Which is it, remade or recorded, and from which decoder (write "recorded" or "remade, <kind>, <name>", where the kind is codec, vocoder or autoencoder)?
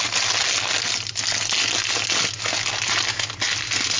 recorded